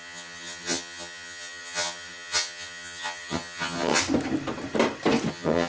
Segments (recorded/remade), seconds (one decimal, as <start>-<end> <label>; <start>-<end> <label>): 0.0-4.0 remade; 4.0-5.3 recorded; 5.3-5.7 remade